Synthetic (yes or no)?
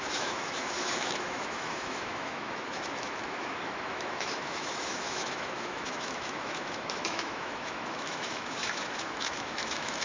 yes